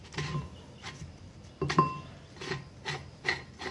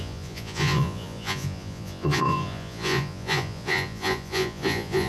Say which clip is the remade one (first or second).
second